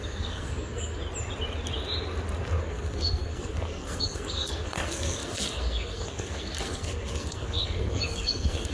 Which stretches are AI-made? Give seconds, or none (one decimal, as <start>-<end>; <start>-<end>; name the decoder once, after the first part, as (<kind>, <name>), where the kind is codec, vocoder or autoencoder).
0.0-1.0 (codec, SNAC); 2.6-8.7